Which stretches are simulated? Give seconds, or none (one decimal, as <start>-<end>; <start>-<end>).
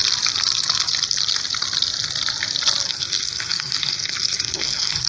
2.9-5.1